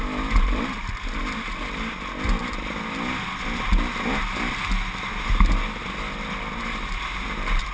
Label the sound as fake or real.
real